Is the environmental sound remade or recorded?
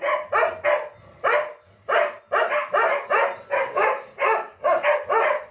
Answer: recorded